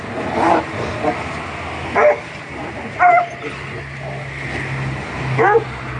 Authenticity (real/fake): real